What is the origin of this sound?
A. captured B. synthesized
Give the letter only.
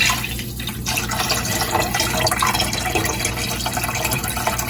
A